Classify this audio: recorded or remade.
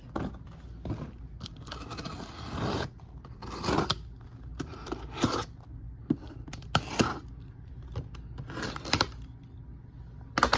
recorded